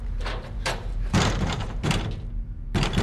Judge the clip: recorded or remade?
remade